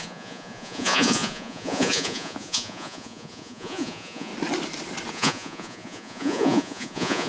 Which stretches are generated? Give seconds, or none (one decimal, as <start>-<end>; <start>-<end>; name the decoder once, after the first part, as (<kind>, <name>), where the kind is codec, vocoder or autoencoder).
0.0-4.3 (vocoder, Vocos); 5.1-7.3